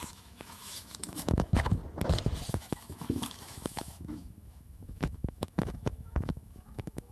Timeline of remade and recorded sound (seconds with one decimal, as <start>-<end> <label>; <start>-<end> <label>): 0.0-1.8 remade; 1.8-2.5 recorded; 2.5-7.1 remade